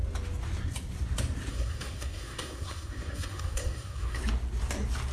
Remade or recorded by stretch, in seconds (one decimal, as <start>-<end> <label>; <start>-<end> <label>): 0.0-1.5 recorded; 1.5-4.2 remade; 4.2-5.1 recorded